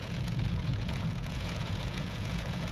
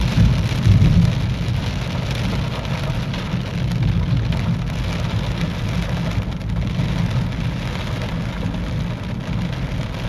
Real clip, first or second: second